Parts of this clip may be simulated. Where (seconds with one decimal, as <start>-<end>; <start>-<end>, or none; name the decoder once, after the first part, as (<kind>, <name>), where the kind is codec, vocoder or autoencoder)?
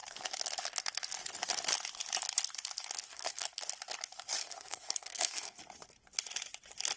3.1-3.6 (codec, SNAC); 4.4-5.6